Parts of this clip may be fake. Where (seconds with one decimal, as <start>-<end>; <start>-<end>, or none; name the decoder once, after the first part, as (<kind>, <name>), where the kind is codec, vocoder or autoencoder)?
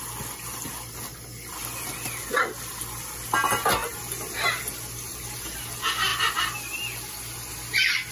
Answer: none